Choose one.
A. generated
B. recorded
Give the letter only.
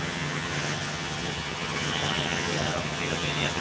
A